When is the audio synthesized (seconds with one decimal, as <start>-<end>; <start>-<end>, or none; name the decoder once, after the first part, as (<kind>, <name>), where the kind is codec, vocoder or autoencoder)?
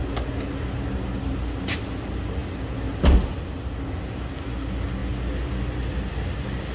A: none